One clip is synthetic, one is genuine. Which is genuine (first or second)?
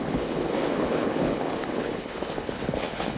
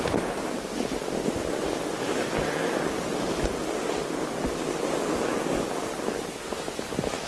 second